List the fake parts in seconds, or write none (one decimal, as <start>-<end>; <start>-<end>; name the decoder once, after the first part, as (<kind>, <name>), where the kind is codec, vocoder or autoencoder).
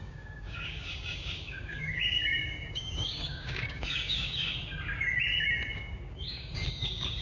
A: 0.0-4.6 (codec, DAC); 5.4-7.2